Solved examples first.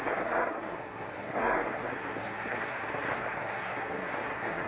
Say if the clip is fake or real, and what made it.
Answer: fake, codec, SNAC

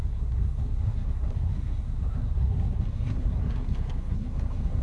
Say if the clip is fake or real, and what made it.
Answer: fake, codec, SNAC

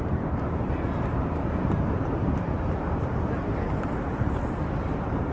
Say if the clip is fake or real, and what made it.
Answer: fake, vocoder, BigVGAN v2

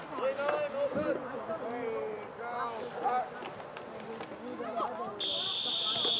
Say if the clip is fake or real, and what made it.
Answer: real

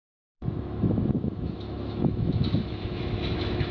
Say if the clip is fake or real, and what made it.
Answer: fake, autoencoder, DAC-VAE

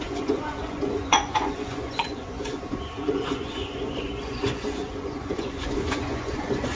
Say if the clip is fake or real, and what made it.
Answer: fake, vocoder, Vocos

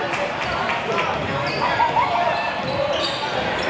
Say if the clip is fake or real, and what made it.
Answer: real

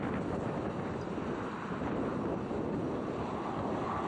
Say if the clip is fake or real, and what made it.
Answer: real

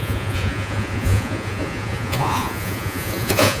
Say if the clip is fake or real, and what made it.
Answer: fake, vocoder, Vocos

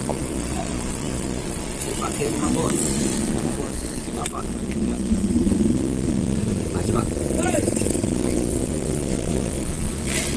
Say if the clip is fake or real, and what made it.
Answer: fake, vocoder, Vocos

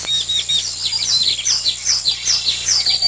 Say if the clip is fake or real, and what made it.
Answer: real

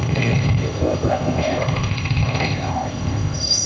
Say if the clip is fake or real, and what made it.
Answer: fake, codec, ZipCodec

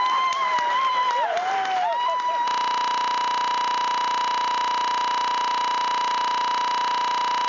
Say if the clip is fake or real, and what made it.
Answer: real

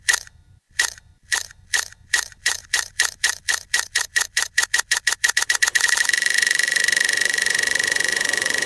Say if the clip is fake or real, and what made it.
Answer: fake, vocoder, Vocos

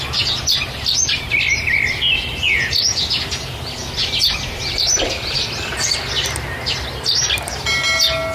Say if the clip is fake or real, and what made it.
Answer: real